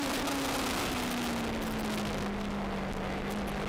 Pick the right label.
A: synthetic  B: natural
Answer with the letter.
B